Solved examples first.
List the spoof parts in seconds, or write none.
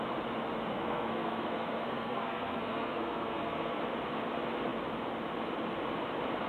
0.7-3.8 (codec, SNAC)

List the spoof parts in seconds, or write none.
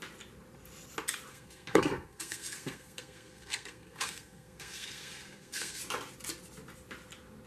1.3-5.8 (codec, SNAC)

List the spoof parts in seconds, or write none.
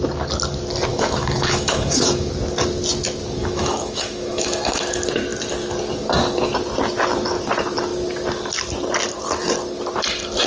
0.9-2.3 (autoencoder, DAC-VAE); 3.4-4.8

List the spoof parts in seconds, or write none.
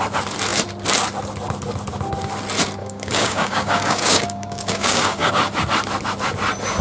2.8-5.3 (codec, DAC)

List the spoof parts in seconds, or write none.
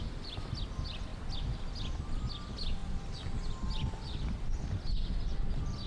none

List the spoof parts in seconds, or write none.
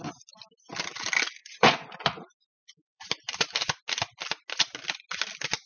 1.4-3.8 (vocoder, BigVGAN v2)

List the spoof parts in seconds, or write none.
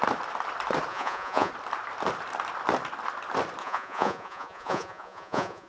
0.9-1.5 (vocoder, Vocos); 3.6-5.7